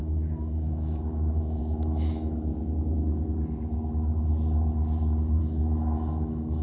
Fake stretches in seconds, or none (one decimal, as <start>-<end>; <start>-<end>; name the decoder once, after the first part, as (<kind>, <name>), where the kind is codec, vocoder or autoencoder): 0.0-2.5 (autoencoder, DAC-VAE); 5.4-6.6